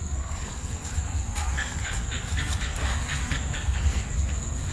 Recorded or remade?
remade